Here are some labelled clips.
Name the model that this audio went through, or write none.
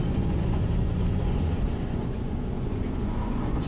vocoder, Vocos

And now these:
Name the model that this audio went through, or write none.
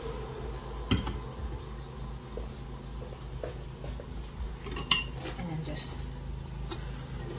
none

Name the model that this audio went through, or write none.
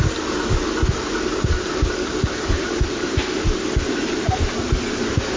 none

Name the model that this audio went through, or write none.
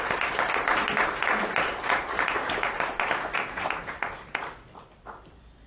none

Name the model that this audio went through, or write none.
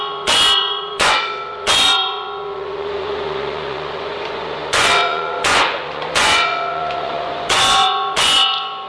vocoder, Vocos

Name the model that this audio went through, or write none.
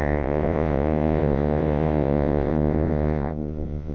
vocoder, Vocos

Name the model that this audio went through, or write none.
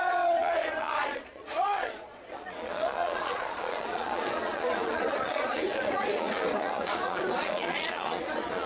vocoder, Vocos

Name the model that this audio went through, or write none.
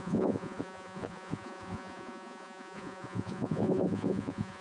vocoder, Vocos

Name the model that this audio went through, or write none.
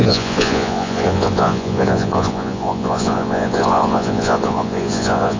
vocoder, Vocos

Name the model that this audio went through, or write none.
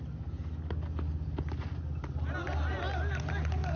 none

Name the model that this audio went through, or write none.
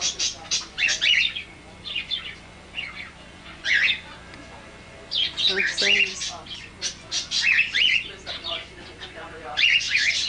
vocoder, Vocos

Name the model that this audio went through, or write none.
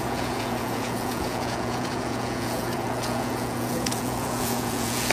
vocoder, Vocos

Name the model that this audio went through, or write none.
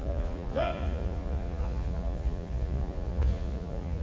vocoder, Vocos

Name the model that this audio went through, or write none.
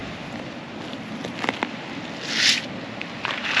none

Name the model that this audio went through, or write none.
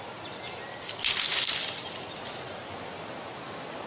none